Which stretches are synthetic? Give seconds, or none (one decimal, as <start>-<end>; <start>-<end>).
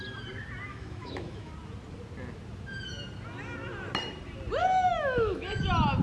0.7-1.5; 4.6-5.6